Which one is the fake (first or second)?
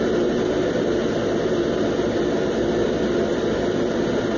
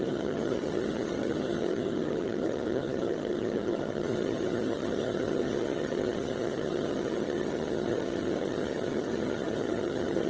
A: second